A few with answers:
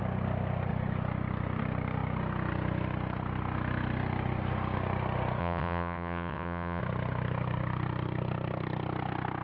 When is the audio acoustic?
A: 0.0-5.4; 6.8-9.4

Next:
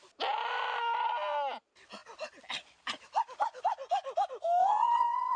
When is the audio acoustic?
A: 0.0-4.6

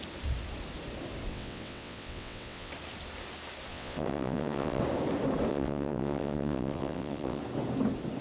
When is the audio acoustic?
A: 0.0-1.3; 2.7-3.7; 4.8-5.5; 7.4-8.2

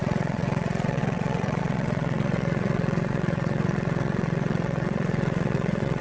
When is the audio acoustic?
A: none

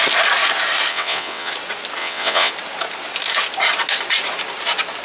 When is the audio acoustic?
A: 0.0-0.9; 1.5-2.0; 2.5-5.0